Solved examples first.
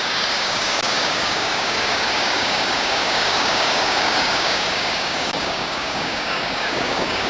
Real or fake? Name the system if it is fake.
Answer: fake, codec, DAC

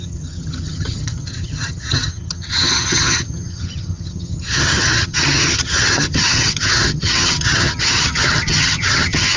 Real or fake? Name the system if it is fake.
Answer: fake, vocoder, HiFi-GAN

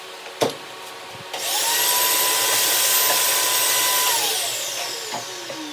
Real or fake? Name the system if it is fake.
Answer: real